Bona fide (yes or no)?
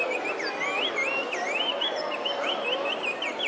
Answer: yes